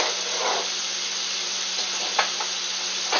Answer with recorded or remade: recorded